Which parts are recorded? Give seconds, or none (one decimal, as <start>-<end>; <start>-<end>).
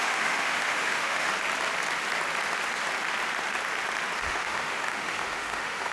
1.3-4.2